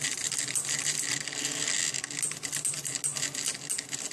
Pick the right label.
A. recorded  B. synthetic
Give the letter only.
A